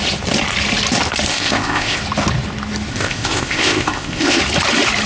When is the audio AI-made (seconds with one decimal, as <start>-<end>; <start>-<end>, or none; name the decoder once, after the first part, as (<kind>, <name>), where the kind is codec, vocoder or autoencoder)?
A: 1.3-2.0 (codec, ZipCodec); 2.9-4.4